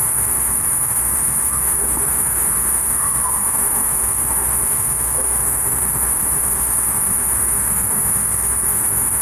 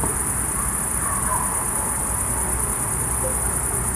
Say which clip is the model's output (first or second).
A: first